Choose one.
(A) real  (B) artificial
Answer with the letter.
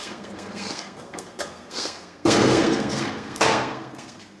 B